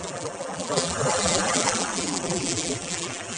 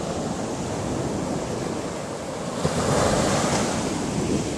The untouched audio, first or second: second